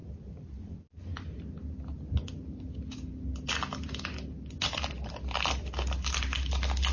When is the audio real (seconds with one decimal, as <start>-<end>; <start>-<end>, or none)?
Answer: 0.0-6.9